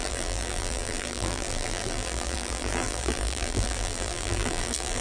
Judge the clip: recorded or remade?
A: remade